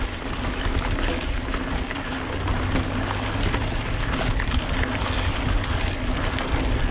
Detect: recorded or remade recorded